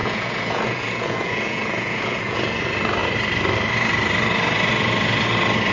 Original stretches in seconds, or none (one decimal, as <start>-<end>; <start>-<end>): 2.6-5.7